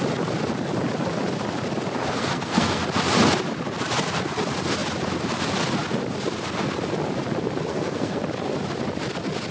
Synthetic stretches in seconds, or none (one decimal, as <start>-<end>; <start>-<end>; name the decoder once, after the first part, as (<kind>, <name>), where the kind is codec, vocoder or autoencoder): 2.1-2.8 (codec, SNAC); 7.7-8.2